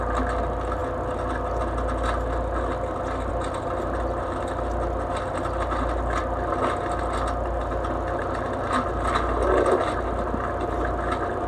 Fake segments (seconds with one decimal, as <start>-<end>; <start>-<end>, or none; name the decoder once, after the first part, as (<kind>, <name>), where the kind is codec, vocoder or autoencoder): none